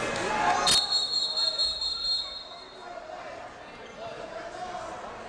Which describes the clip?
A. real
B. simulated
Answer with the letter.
A